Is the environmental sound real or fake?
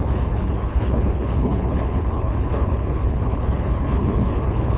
fake